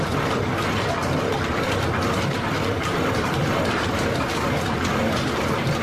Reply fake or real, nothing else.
fake